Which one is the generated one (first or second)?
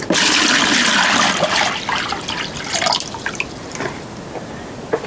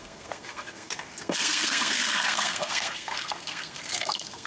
second